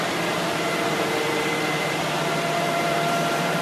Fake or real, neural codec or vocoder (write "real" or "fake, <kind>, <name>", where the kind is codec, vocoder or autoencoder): fake, vocoder, BigVGAN v2